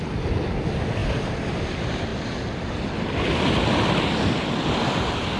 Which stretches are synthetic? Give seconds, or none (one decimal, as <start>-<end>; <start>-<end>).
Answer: none